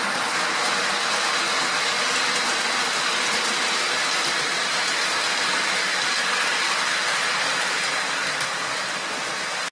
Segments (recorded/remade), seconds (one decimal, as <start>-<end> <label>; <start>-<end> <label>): 0.0-9.7 recorded